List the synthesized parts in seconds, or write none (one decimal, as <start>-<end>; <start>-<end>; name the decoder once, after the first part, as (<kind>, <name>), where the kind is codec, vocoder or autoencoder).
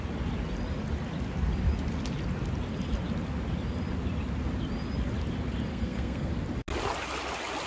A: 5.7-6.3 (codec, SNAC)